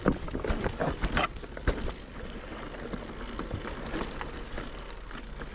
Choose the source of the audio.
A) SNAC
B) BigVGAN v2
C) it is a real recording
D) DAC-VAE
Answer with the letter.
C